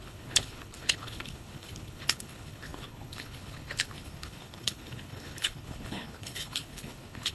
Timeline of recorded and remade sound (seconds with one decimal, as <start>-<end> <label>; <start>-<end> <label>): 0.0-7.3 remade